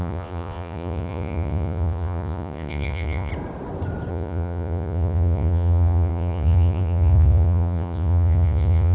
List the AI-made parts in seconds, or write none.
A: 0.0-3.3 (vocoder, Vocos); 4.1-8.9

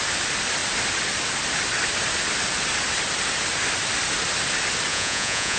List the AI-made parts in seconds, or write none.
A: 4.9-5.6 (vocoder, Vocos)

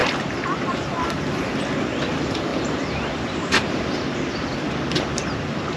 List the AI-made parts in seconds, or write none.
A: 2.5-3.7 (vocoder, BigVGAN v2)

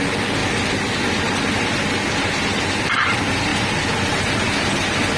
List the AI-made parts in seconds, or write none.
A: none

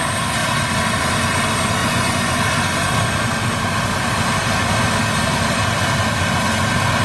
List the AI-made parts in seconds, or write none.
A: 1.8-2.4 (vocoder, Vocos)

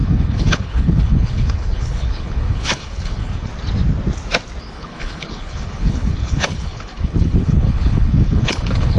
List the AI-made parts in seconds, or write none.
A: 0.0-3.5 (codec, HILCodec); 4.6-9.0

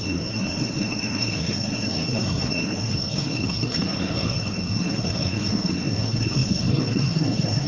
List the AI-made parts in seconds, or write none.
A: 0.0-7.7 (codec, SNAC)